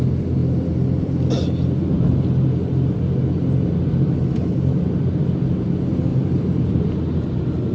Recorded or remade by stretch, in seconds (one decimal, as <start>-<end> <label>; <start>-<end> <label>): 0.0-6.1 recorded; 6.1-6.8 remade; 6.8-7.7 recorded